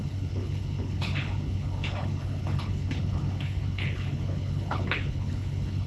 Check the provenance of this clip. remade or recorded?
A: remade